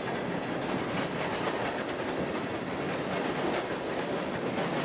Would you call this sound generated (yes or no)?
no